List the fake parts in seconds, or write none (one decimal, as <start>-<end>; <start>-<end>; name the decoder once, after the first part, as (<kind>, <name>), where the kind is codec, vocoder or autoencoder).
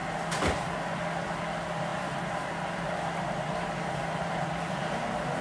0.0-1.0 (vocoder, BigVGAN v2); 1.9-5.4